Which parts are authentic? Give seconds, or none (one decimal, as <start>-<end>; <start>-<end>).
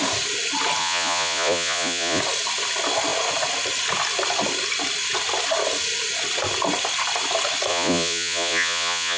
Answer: 0.0-0.8; 2.2-7.7